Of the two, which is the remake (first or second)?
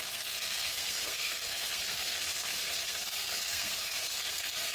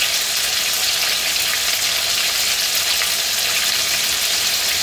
first